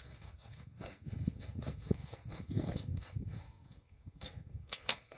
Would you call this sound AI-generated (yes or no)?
yes